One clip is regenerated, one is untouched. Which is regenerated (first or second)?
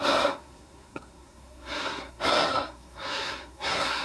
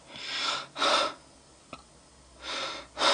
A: first